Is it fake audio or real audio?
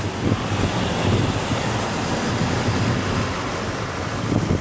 real